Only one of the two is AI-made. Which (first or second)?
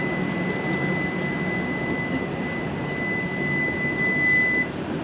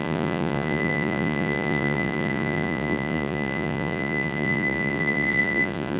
second